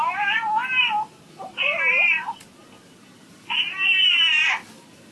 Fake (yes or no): no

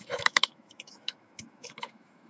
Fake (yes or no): yes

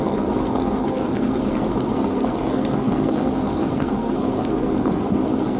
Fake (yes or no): yes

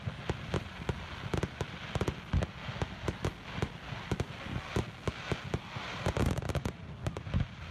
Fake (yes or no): no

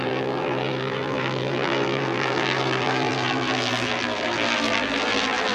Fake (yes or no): yes